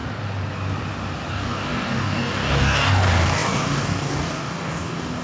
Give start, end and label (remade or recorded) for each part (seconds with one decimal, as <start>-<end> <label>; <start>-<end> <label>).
0.0-1.3 recorded; 1.3-5.2 remade